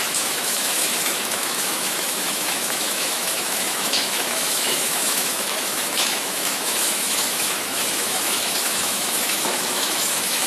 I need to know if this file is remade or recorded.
remade